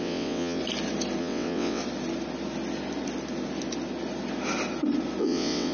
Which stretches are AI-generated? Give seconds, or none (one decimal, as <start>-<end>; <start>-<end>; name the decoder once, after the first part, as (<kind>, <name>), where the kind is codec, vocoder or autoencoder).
0.0-0.6 (vocoder, WaveNeXt); 1.2-1.8; 5.2-5.7